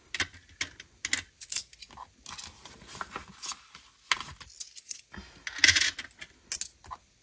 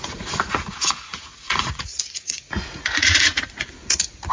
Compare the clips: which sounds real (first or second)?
first